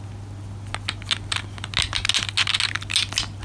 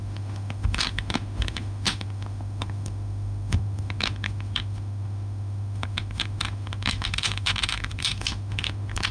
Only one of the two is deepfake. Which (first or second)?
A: second